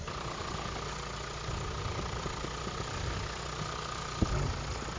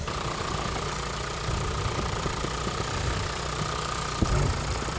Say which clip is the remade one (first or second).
second